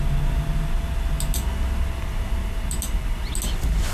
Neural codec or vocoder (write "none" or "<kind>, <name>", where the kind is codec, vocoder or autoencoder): none